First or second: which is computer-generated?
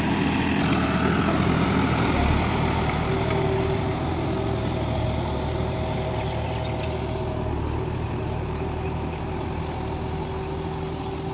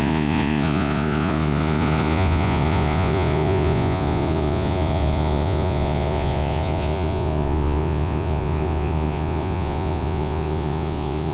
second